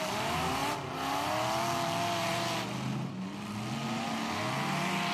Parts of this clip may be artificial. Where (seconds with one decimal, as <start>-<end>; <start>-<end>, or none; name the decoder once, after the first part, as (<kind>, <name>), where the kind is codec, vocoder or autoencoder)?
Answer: none